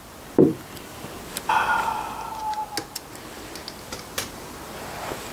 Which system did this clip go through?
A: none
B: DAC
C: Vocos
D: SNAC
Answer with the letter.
A